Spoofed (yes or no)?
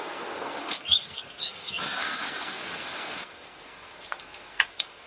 yes